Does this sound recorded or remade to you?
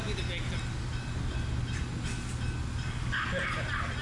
recorded